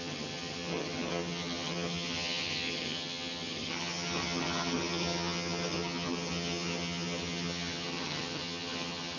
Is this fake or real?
fake